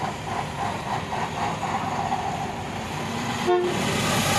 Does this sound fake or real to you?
real